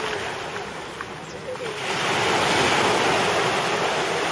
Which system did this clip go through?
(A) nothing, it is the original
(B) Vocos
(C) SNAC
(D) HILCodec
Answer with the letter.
A